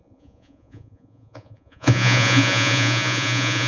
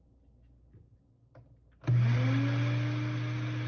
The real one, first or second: second